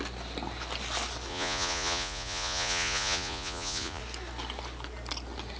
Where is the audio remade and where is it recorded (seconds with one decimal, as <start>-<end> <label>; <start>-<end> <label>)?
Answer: 0.0-1.3 recorded; 1.3-4.0 remade; 4.0-5.6 recorded